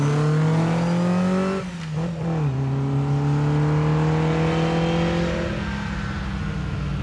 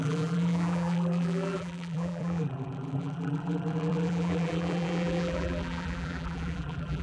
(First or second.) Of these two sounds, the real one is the first